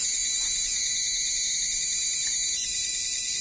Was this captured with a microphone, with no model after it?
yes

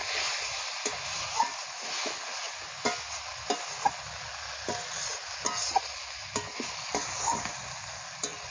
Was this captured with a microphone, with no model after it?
yes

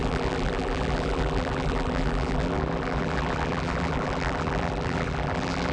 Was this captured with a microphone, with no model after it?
no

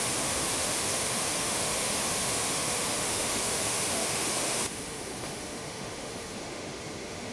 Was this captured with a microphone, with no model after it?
no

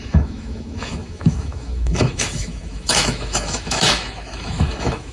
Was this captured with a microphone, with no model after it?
no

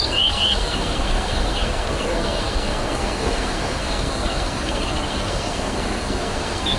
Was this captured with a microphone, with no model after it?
no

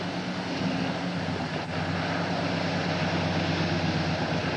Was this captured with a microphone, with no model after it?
yes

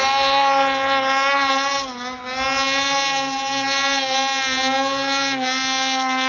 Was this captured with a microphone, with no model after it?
yes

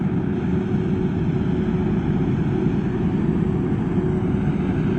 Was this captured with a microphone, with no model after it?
yes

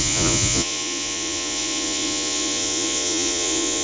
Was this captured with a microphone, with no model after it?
no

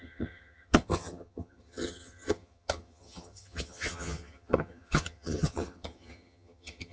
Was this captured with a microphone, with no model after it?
no